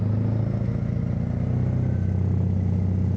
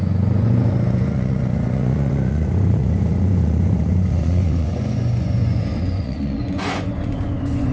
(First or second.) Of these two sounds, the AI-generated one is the second